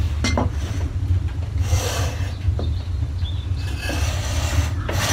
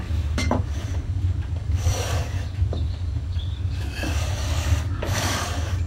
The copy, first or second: second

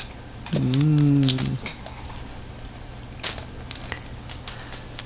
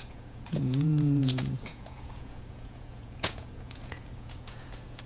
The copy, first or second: second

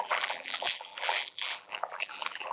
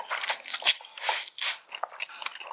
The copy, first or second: first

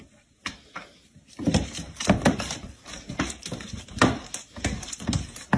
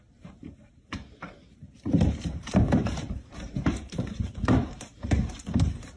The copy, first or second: second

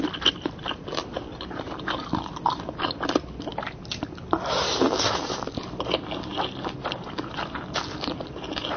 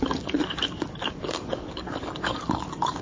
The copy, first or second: second